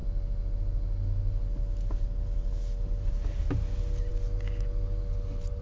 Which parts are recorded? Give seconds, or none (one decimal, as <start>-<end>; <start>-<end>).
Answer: 0.0-5.6